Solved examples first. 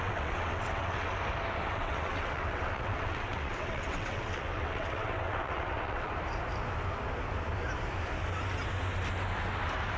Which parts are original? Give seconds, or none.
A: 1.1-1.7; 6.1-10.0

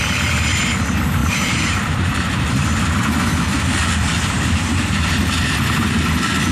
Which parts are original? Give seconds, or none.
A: 0.0-1.2; 2.4-3.8; 5.9-6.5

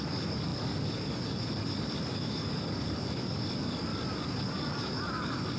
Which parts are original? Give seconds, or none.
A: 3.9-4.4

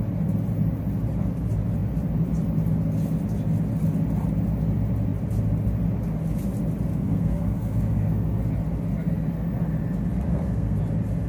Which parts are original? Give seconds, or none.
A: 0.0-6.9; 8.4-10.3; 10.8-11.3